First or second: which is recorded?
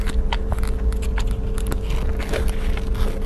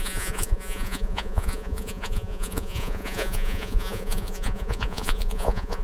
first